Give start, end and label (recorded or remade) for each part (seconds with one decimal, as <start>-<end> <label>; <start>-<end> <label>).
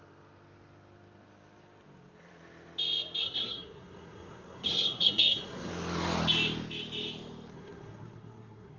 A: 0.0-3.2 recorded; 3.2-5.7 remade; 5.7-7.5 recorded; 7.5-8.8 remade